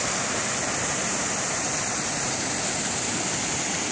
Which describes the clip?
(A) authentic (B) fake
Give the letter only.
A